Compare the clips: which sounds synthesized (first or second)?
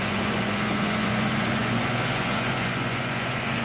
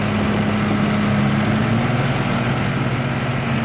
first